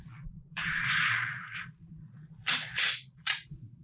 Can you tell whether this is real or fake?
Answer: fake